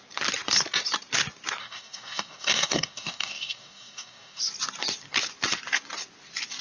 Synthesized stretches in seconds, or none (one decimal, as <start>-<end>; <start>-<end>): 1.6-4.4